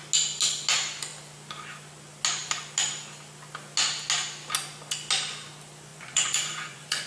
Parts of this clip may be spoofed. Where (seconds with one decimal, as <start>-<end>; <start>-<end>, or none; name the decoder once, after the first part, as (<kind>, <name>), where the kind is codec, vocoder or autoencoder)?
5.9-7.1 (vocoder, Vocos)